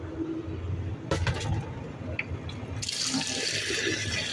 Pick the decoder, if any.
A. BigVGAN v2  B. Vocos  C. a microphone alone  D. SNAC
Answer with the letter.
C